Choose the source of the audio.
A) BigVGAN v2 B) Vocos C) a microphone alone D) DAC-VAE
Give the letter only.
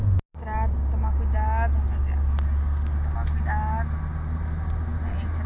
C